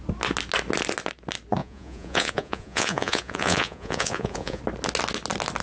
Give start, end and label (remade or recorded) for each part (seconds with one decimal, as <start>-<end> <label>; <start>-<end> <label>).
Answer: 0.0-1.6 recorded; 1.6-4.6 remade; 4.6-5.6 recorded